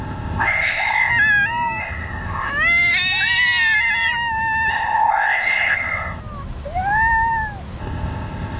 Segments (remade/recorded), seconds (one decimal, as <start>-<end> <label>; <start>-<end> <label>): 0.0-1.1 remade; 1.1-1.8 recorded; 1.8-2.5 remade; 2.5-4.7 recorded; 4.7-6.2 remade; 6.2-7.8 recorded; 7.8-8.6 remade